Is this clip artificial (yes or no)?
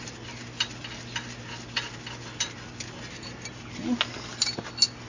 no